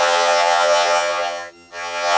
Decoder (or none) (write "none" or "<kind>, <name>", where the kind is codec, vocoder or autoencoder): vocoder, HiFi-GAN